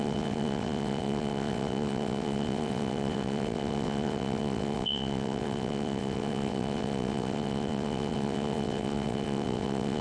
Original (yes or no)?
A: no